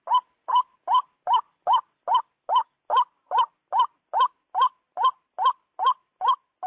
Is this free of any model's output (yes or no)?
yes